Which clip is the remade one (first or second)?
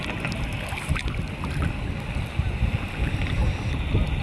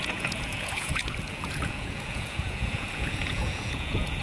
second